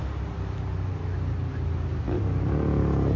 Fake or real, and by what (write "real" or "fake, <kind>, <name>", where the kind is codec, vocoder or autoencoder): real